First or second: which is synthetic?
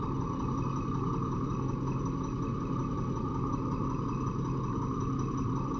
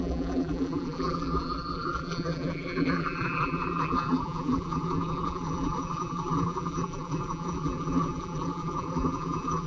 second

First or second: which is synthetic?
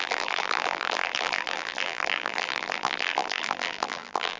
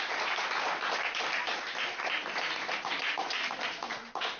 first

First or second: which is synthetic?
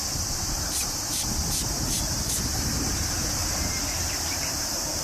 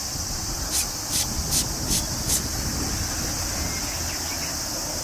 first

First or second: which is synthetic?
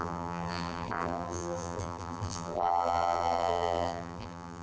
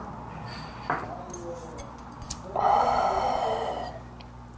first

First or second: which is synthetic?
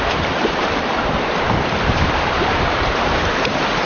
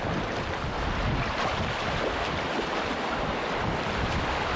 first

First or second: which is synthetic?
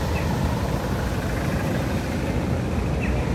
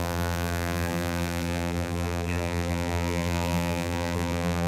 second